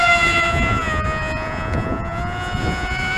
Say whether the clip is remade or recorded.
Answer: remade